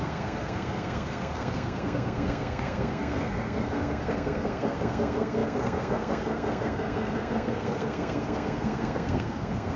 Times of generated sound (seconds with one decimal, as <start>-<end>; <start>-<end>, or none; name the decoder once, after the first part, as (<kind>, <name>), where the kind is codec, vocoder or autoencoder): 0.0-9.8 (codec, SNAC)